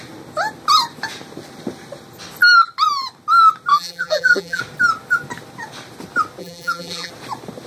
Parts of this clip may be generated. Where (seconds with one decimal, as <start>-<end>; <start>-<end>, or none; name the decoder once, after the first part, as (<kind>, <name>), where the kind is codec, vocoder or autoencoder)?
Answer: 3.7-4.6 (vocoder, BigVGAN v2); 6.4-7.1